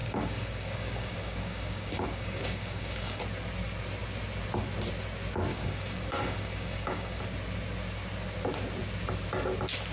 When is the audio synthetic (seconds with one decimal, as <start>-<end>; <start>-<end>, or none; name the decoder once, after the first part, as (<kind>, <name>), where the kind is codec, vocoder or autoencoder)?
0.0-3.2 (codec, DAC); 5.5-7.2